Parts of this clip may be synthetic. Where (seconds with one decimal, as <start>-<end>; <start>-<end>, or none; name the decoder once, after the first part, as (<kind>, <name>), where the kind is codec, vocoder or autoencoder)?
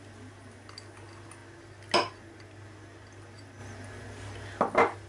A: none